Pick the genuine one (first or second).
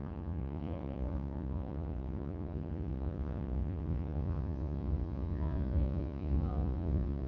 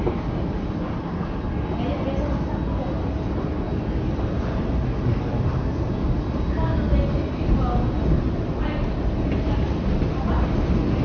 second